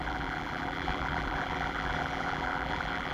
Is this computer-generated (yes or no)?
yes